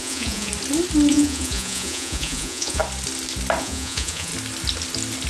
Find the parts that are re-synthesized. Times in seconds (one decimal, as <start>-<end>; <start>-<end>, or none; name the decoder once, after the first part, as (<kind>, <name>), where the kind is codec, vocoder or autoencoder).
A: 0.0-0.5 (vocoder, Vocos); 1.1-2.8; 3.6-4.3